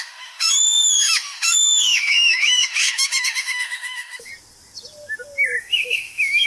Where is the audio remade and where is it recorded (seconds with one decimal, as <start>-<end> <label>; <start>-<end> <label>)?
0.0-4.3 remade; 4.3-5.6 recorded; 5.6-6.5 remade